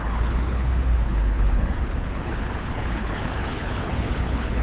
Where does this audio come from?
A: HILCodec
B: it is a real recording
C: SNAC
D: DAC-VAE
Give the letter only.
A